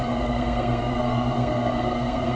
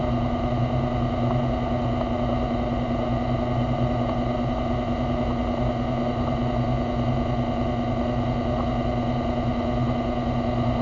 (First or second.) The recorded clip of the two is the second